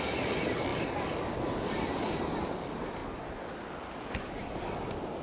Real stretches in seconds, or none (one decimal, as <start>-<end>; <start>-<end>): 0.0-5.2